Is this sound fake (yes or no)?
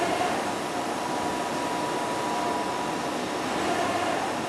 no